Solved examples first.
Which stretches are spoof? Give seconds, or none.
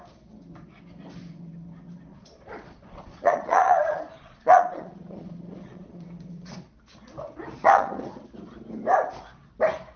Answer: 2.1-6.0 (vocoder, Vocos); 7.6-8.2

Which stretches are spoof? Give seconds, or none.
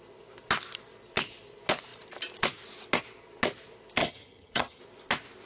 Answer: 4.0-4.8 (vocoder, HiFi-GAN)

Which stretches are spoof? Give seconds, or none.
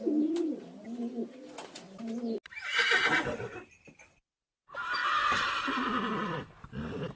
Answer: none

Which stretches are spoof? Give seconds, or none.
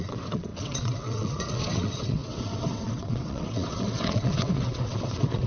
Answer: 0.0-5.5 (vocoder, WaveNeXt)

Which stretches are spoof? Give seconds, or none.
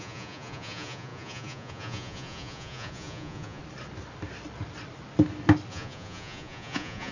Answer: 0.0-3.6 (vocoder, Vocos); 5.7-7.1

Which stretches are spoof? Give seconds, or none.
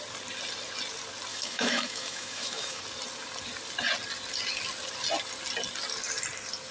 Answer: 1.3-2.8 (autoencoder, DAC-VAE)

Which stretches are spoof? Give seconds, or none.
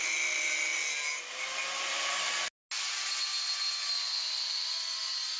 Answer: none